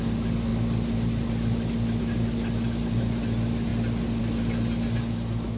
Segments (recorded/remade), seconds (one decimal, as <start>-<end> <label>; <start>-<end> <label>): 0.0-5.6 recorded